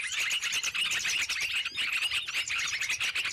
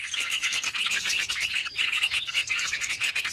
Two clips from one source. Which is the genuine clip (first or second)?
first